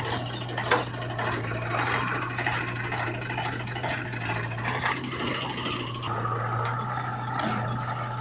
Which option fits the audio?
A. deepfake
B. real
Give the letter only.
B